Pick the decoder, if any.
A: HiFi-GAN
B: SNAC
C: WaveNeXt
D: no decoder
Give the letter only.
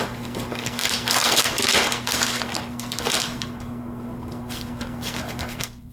B